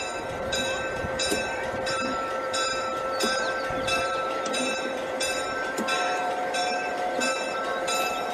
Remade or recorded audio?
remade